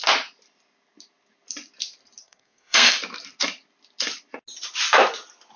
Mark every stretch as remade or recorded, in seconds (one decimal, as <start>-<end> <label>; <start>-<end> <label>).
0.0-2.2 recorded; 2.2-3.0 remade; 3.0-5.6 recorded